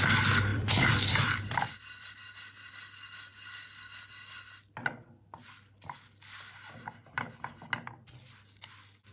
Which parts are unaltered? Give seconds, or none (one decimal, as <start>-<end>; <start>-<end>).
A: 0.0-0.5; 2.1-9.1